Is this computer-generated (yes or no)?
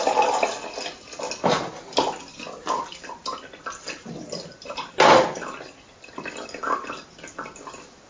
no